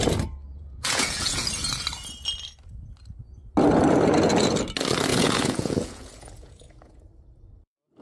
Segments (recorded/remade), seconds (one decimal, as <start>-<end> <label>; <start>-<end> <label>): 0.0-0.5 recorded; 0.5-1.5 remade; 1.5-5.1 recorded; 5.1-7.0 remade; 7.0-8.0 recorded